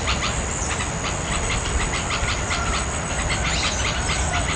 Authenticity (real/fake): real